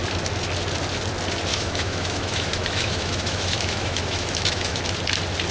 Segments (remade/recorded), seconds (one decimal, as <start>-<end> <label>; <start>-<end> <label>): 0.0-1.5 recorded; 1.5-4.8 remade; 4.8-5.5 recorded